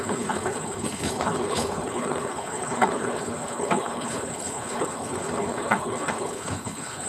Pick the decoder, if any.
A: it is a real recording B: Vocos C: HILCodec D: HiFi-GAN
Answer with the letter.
C